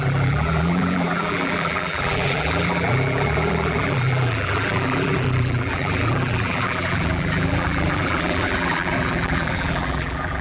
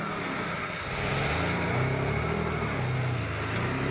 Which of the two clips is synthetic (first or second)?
first